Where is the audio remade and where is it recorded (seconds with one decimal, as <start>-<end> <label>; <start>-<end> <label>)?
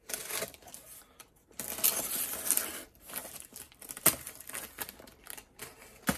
0.0-6.2 recorded